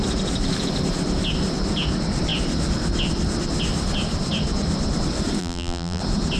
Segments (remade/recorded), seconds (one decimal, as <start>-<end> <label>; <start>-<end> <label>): 0.0-5.4 recorded; 5.4-6.0 remade; 6.0-6.4 recorded